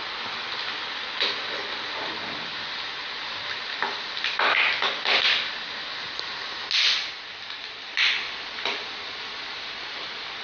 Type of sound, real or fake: real